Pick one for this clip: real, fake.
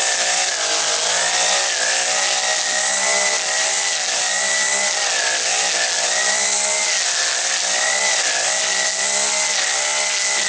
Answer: real